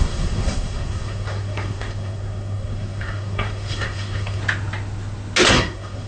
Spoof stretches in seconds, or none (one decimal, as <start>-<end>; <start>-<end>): 0.0-4.4; 5.5-6.1